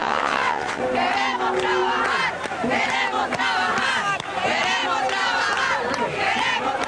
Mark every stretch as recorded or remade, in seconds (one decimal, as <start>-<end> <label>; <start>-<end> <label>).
0.0-0.8 remade; 0.8-6.9 recorded